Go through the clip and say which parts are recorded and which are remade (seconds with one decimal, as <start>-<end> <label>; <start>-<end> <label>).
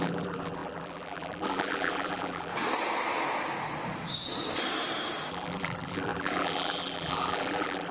0.0-2.5 remade; 2.5-5.3 recorded; 5.3-7.9 remade